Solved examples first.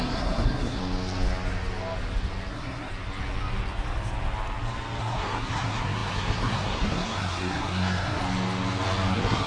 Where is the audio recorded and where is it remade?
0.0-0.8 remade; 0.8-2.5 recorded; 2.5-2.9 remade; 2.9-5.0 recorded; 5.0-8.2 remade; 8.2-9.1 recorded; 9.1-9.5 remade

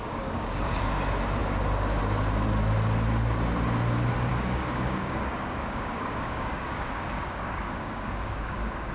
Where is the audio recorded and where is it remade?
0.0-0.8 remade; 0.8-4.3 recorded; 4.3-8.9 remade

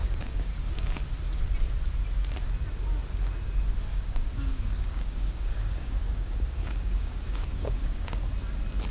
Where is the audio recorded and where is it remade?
0.0-1.0 remade; 1.0-3.9 recorded; 3.9-8.3 remade; 8.3-8.9 recorded